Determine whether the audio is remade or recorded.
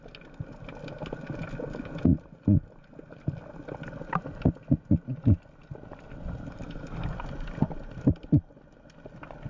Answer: recorded